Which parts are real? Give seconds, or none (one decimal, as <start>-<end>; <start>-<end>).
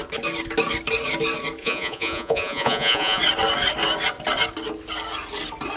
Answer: 0.0-1.6; 3.2-5.8